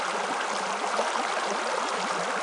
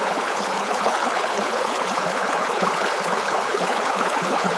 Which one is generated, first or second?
second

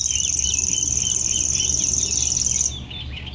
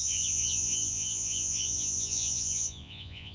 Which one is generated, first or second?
second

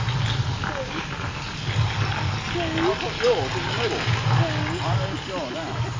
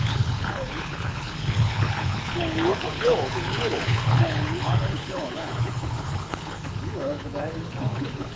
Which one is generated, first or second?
second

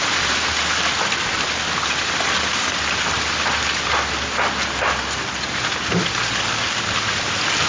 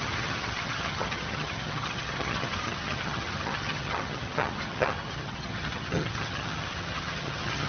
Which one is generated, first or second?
second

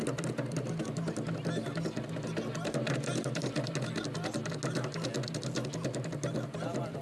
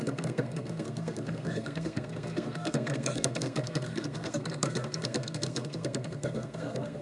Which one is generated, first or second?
second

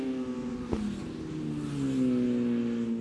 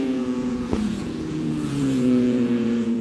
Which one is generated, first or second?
second